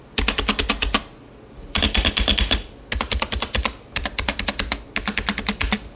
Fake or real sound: real